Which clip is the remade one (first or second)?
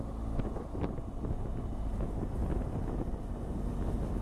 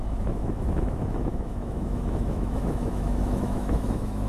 second